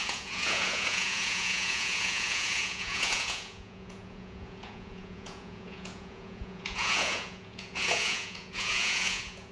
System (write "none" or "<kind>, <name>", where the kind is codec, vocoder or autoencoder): vocoder, Vocos